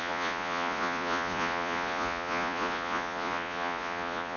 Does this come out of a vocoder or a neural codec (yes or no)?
yes